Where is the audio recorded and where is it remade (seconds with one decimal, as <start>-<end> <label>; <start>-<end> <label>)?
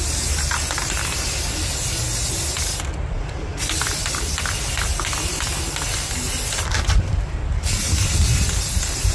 0.0-9.1 recorded